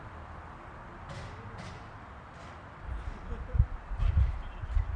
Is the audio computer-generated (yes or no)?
no